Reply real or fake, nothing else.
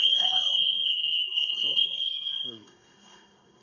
fake